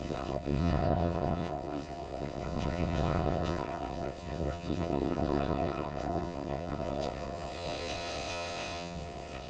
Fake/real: fake